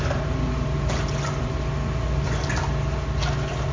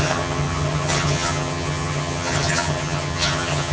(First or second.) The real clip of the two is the first